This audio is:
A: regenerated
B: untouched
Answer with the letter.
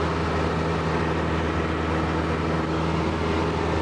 B